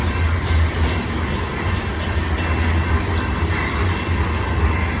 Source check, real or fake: fake